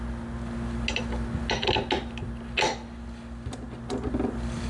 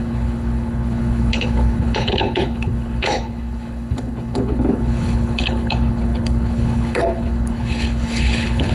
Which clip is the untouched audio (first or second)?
first